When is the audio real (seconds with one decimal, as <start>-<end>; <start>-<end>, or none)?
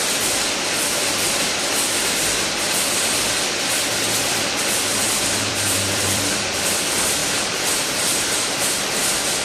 7.2-8.5